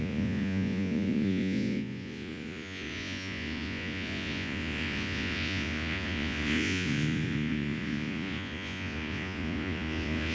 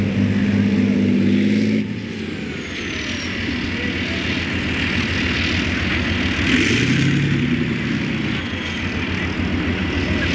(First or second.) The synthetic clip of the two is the first